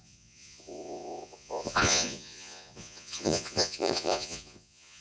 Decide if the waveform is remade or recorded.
remade